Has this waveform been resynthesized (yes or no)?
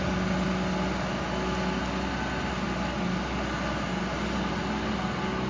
no